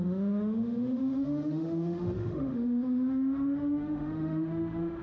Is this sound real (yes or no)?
no